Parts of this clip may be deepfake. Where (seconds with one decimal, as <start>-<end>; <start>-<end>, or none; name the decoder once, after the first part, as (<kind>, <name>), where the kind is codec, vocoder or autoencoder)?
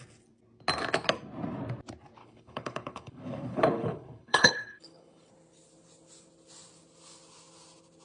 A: 2.2-5.3 (codec, HILCodec)